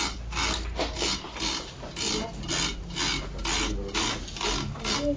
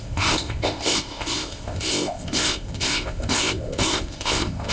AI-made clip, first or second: second